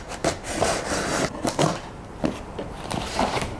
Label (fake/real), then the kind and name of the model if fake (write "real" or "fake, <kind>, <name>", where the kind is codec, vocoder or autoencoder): real